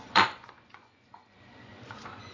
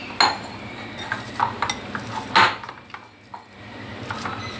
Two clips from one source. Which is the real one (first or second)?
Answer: second